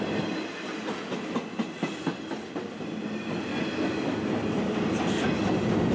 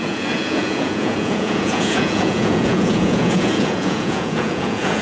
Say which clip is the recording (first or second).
first